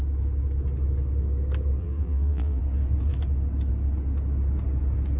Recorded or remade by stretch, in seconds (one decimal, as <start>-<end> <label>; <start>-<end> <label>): 0.0-1.8 recorded; 1.8-2.6 remade; 2.6-5.2 recorded